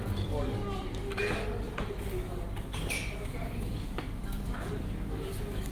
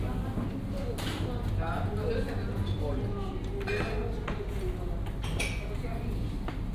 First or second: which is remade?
first